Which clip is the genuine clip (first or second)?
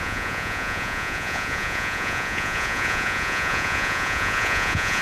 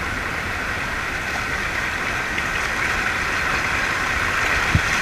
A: second